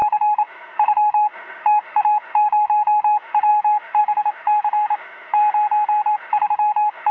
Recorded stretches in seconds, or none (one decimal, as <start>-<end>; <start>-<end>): 5.4-6.1